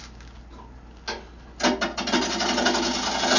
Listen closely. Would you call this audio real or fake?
real